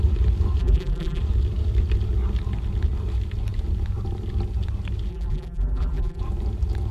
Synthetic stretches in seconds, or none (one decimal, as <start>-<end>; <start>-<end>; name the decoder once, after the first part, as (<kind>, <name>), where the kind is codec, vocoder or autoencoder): 0.6-1.2 (vocoder, BigVGAN v2); 5.1-6.2